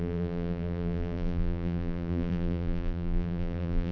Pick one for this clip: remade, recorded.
remade